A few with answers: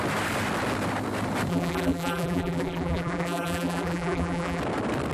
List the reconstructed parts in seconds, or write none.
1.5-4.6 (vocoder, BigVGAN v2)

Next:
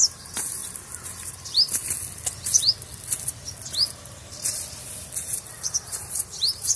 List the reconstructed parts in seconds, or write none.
0.0-0.6 (vocoder, BigVGAN v2); 1.3-1.8; 5.2-6.8

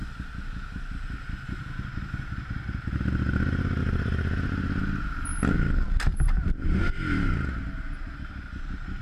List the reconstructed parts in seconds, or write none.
3.8-4.5 (vocoder, BigVGAN v2); 6.1-6.8

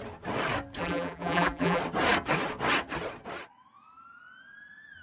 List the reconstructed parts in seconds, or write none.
0.8-1.8 (vocoder, BigVGAN v2)